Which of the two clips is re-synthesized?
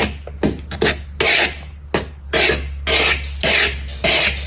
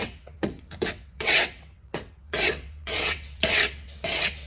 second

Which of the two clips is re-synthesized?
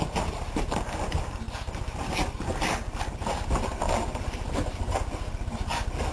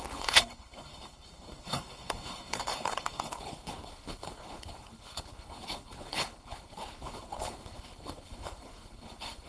second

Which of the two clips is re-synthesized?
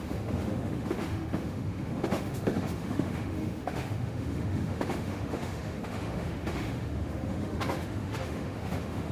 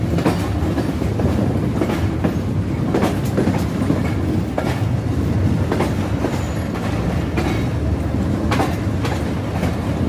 first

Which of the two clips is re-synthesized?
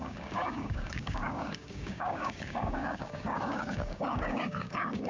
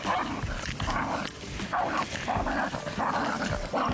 first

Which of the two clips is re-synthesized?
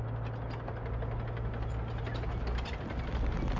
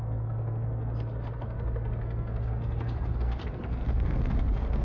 second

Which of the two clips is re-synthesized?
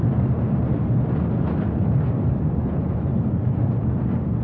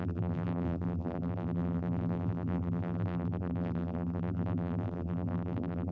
second